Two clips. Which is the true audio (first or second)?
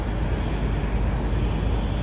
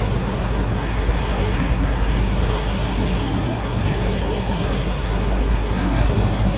first